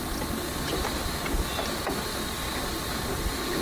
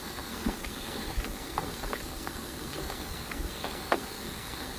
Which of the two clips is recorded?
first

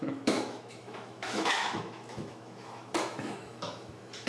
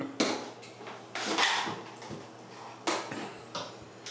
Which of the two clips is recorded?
second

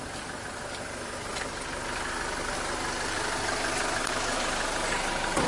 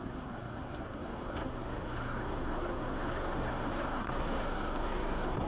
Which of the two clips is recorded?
first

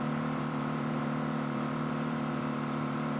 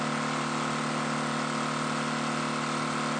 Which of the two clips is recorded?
second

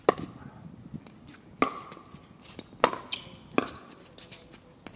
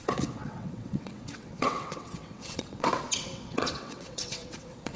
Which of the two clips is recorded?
first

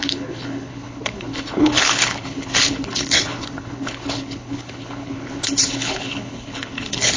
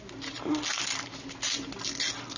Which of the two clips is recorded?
second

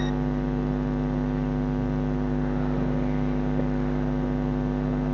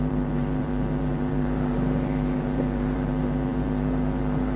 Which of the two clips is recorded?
first